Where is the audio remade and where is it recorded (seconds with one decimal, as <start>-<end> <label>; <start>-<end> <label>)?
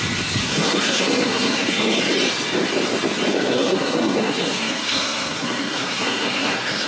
0.0-0.4 recorded; 0.4-2.0 remade; 2.0-3.3 recorded; 3.3-6.9 remade